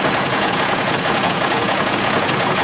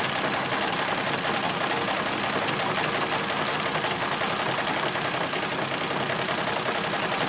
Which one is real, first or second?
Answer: second